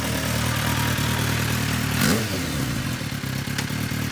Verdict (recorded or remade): recorded